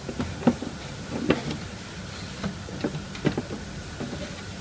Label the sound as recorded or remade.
recorded